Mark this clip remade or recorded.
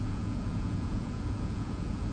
remade